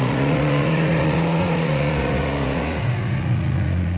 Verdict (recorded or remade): remade